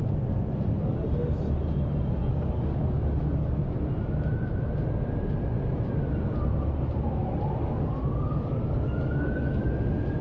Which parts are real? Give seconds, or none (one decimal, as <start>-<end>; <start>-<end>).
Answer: 0.0-2.2; 3.6-7.6; 9.7-10.2